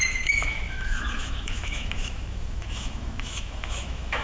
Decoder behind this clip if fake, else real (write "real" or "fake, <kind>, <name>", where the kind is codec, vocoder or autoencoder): fake, autoencoder, DAC-VAE